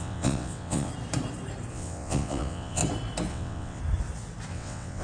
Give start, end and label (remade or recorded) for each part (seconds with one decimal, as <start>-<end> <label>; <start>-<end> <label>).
0.0-0.9 remade; 0.9-1.7 recorded; 1.7-2.8 remade; 2.8-3.3 recorded; 3.3-3.8 remade; 3.8-4.5 recorded; 4.5-5.0 remade